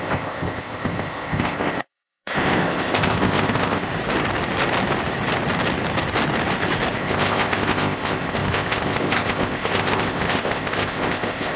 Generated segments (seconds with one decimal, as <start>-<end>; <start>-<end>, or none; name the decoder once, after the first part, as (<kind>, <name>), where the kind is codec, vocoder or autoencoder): 0.0-3.9 (codec, ZipCodec); 7.0-11.6